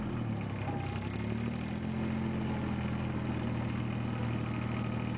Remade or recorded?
recorded